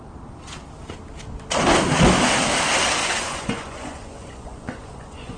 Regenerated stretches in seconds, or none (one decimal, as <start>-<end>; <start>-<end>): 3.0-5.4